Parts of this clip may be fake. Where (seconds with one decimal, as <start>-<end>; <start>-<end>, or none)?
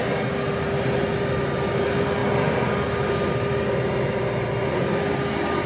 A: none